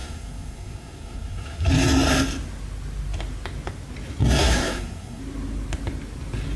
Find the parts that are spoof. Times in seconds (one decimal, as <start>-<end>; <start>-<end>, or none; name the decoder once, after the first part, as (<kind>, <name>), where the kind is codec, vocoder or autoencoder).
0.0-1.7 (codec, SNAC); 4.4-5.2